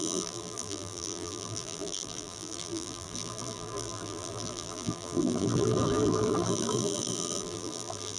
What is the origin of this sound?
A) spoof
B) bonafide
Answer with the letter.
A